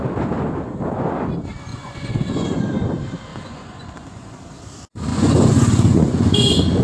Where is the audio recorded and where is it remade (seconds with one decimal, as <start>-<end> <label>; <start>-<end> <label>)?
0.0-1.7 recorded; 1.7-2.6 remade; 2.6-3.3 recorded; 3.3-4.4 remade; 4.4-5.1 recorded; 5.1-6.8 remade